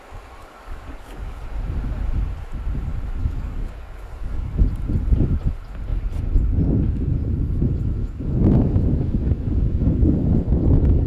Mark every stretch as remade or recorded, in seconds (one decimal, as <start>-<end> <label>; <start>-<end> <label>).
0.0-0.4 recorded; 0.4-1.4 remade; 1.4-3.2 recorded; 3.2-4.5 remade; 4.5-8.0 recorded; 8.0-11.1 remade